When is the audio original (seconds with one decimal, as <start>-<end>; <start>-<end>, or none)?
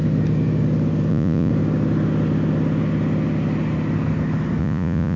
0.0-1.1; 1.5-4.6